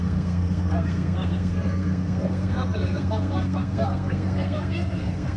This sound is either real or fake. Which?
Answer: fake